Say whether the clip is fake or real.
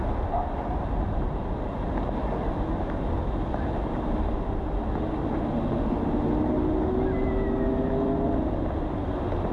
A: real